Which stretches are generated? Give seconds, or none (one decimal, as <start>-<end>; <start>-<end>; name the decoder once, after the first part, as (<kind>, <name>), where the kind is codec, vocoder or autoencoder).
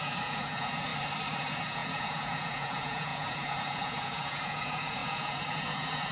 0.0-0.9 (vocoder, Vocos); 1.4-6.1